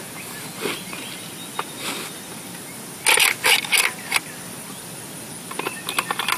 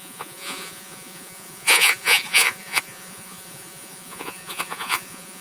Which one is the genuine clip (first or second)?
first